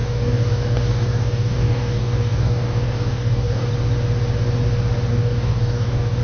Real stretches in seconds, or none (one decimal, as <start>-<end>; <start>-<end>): 3.7-5.1